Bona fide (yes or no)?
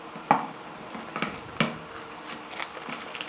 yes